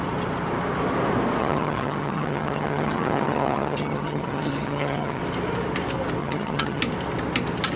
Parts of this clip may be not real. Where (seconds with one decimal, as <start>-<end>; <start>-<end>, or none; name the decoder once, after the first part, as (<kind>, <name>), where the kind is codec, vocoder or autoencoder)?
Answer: 1.4-5.2 (vocoder, HiFi-GAN); 6.2-6.8